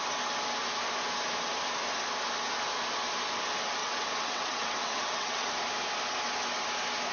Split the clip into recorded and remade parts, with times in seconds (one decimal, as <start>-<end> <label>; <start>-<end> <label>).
0.0-3.8 recorded; 3.8-5.5 remade; 5.5-7.1 recorded